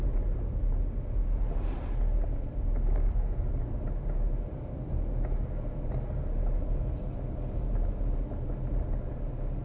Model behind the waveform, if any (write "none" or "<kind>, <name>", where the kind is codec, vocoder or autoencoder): none